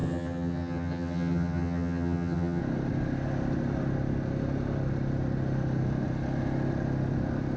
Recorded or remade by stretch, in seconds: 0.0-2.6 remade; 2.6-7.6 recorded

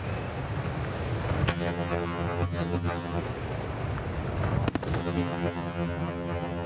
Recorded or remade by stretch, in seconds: 0.0-1.5 recorded; 1.5-3.2 remade; 3.2-5.0 recorded; 5.0-6.7 remade

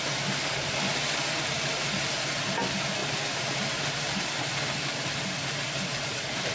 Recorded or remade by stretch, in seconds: 0.0-6.5 recorded

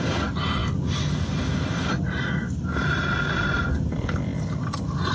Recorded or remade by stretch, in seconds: 0.0-5.1 recorded

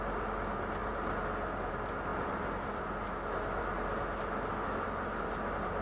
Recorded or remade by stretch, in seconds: 0.0-5.8 recorded

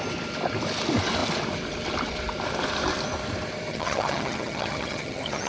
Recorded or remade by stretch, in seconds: 0.0-3.7 recorded; 3.7-5.5 remade

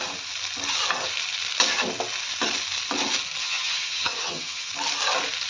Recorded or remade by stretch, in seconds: 0.0-3.4 recorded; 3.4-4.7 remade; 4.7-5.5 recorded

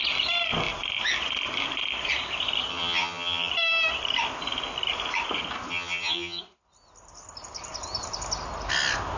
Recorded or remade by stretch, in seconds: 0.0-2.7 recorded; 2.7-3.5 remade; 3.5-5.7 recorded; 5.7-6.4 remade; 6.4-9.2 recorded